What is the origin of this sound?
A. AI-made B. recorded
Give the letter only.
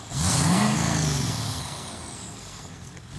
A